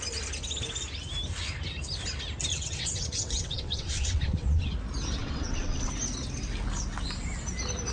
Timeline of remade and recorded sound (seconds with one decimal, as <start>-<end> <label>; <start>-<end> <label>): 0.0-2.5 recorded; 2.5-4.7 remade; 4.7-5.2 recorded; 5.2-5.9 remade; 5.9-7.9 recorded